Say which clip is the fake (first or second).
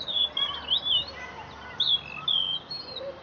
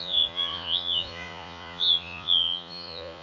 second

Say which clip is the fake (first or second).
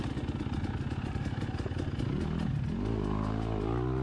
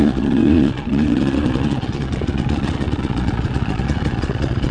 second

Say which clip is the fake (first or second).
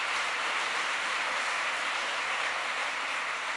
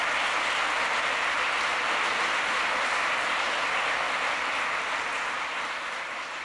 first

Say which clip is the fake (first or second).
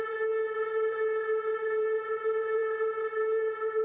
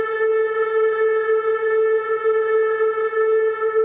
first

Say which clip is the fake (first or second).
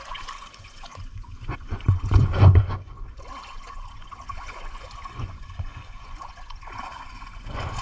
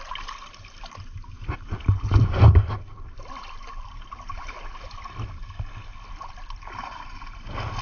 first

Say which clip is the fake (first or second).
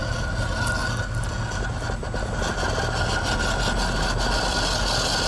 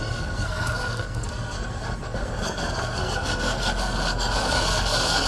second